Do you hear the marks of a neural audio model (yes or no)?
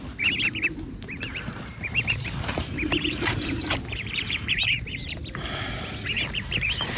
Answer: yes